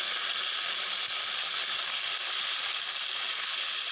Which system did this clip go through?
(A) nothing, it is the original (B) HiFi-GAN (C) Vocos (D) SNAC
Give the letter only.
A